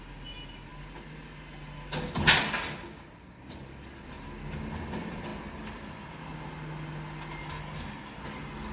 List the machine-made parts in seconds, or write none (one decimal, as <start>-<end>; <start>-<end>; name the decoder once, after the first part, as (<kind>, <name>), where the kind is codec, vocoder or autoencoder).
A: 7.4-8.2 (codec, DAC)